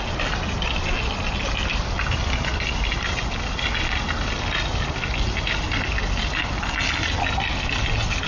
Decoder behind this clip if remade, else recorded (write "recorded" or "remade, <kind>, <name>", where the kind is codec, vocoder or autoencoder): recorded